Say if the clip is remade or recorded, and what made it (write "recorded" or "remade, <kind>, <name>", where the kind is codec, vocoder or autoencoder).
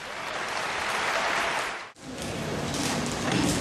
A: recorded